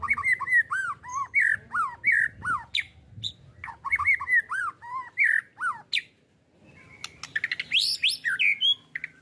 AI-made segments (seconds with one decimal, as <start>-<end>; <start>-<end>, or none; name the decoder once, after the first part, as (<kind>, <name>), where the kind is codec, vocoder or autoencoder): none

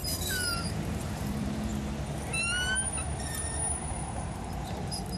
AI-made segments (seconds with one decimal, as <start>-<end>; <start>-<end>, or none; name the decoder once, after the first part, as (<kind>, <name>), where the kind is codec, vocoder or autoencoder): 0.7-1.7 (vocoder, BigVGAN v2); 3.8-5.2

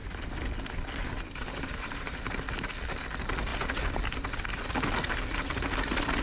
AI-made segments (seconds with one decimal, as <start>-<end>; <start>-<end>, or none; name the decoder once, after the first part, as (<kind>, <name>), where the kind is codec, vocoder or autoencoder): 1.0-2.1 (vocoder, BigVGAN v2)

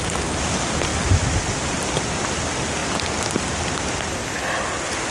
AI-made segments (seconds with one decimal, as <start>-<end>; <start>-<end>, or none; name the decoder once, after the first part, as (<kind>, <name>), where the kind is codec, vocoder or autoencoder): none